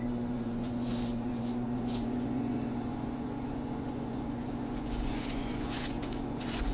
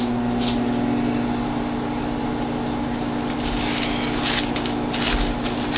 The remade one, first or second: first